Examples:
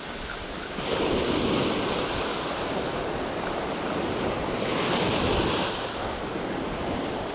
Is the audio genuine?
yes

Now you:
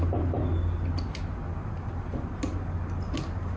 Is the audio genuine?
yes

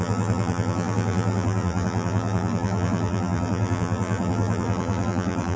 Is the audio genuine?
no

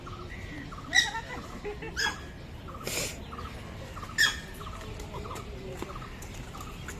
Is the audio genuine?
yes